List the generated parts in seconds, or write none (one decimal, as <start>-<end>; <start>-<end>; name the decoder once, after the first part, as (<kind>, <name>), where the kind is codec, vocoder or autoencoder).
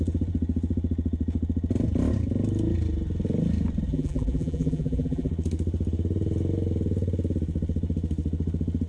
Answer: 3.9-5.3 (vocoder, BigVGAN v2)